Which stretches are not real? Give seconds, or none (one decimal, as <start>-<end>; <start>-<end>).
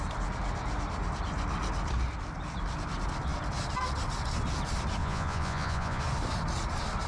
5.0-6.0